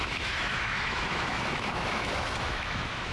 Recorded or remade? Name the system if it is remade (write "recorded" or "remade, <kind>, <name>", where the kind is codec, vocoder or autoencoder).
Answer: remade, autoencoder, DAC-VAE